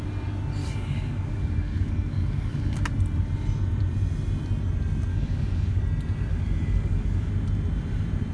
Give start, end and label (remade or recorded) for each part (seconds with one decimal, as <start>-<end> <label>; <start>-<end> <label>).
0.0-0.6 recorded; 0.6-2.8 remade; 2.8-5.1 recorded; 5.1-5.8 remade; 5.8-6.3 recorded; 6.3-7.3 remade; 7.3-8.3 recorded